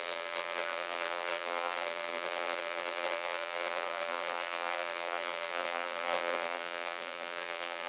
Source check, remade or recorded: remade